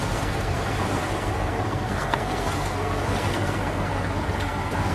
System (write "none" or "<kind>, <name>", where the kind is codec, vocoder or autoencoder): codec, SNAC